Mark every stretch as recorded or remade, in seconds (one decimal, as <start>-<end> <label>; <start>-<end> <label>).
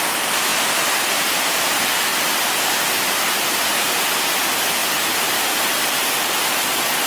0.0-4.8 recorded; 4.8-6.4 remade; 6.4-7.1 recorded